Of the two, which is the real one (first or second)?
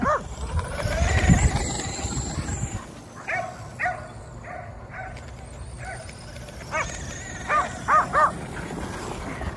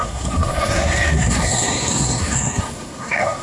first